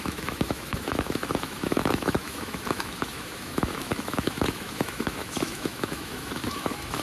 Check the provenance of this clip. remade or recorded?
remade